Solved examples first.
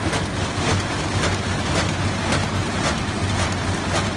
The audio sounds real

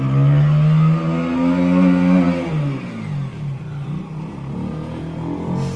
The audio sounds real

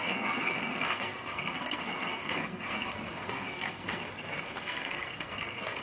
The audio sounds fake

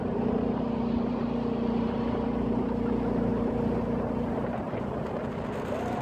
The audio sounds fake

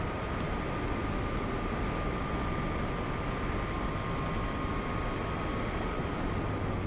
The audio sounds real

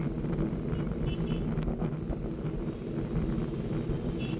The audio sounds real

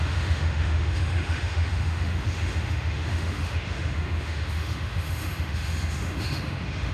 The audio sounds fake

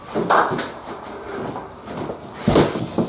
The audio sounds real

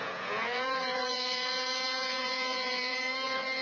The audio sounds fake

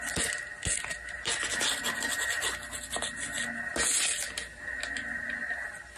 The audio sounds real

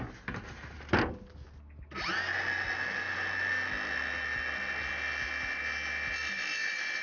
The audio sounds real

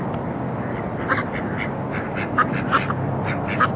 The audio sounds real